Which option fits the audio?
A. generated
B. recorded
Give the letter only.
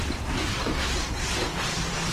A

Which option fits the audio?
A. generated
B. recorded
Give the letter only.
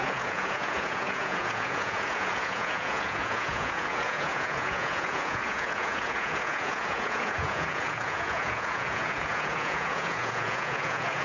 A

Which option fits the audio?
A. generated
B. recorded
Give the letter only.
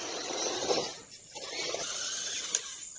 B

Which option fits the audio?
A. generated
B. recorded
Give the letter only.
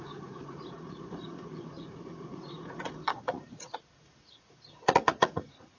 A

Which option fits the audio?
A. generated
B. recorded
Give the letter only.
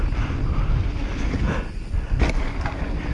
B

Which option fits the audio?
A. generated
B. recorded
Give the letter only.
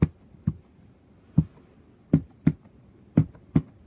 B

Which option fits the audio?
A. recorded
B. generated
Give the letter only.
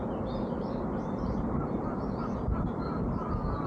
B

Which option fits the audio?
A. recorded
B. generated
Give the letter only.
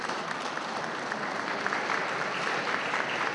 B